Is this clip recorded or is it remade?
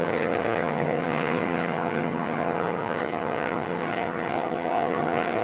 remade